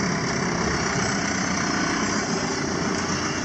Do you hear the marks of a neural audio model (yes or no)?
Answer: no